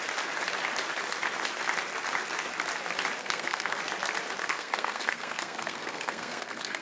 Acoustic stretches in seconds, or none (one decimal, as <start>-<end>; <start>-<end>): 0.0-3.2; 3.8-4.4